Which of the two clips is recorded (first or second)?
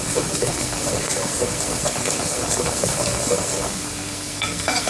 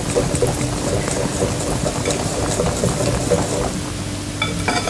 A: second